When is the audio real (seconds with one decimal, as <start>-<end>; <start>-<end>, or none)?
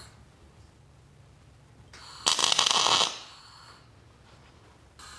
0.0-5.2